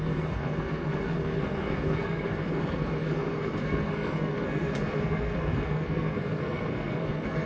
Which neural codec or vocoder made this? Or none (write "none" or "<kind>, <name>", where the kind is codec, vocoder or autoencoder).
codec, SNAC